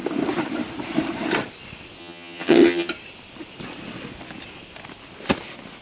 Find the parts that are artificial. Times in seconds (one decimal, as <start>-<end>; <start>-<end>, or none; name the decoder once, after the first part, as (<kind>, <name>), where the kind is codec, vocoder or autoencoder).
2.0-2.9 (vocoder, HiFi-GAN)